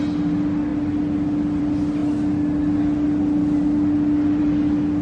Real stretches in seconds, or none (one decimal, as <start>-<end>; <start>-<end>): 0.0-5.0